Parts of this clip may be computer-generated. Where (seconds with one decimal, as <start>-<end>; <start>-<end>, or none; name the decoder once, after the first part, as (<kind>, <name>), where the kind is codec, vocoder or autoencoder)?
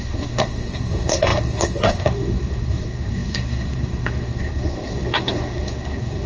0.0-6.3 (codec, SNAC)